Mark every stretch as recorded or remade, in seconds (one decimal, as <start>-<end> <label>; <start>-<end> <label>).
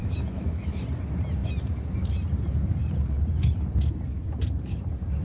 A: 0.0-0.8 remade; 0.8-5.2 recorded